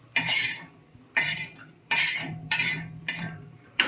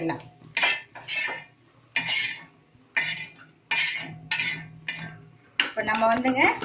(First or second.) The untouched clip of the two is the second